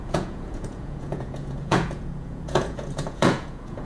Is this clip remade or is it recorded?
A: remade